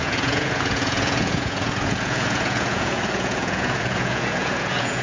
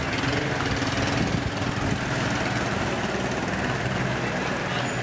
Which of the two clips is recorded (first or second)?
second